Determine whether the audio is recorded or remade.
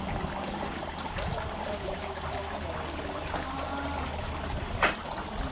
recorded